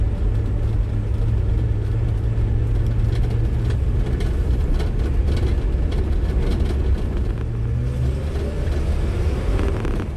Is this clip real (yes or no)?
yes